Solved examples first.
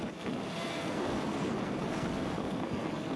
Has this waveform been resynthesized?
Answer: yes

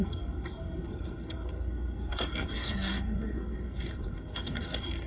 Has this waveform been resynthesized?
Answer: yes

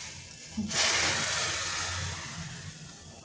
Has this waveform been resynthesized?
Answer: no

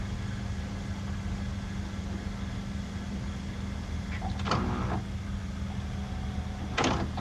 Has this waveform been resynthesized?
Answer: no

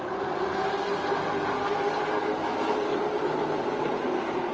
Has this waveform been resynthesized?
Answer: no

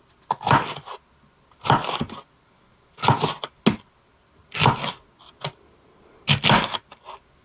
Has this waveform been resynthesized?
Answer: no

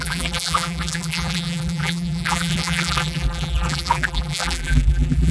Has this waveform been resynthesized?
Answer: yes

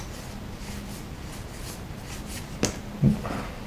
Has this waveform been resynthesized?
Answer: no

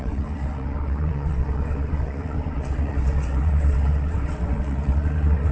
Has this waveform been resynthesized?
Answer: yes